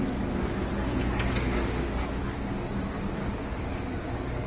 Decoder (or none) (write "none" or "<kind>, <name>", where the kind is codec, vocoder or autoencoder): none